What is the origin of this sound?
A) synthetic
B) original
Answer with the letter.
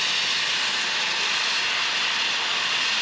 B